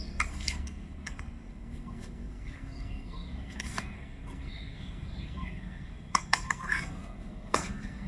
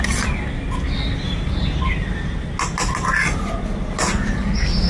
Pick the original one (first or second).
second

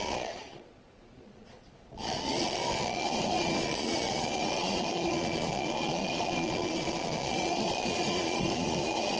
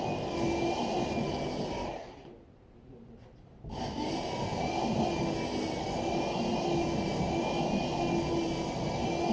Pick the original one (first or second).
second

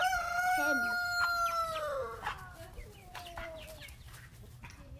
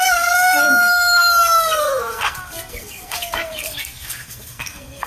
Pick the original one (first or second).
first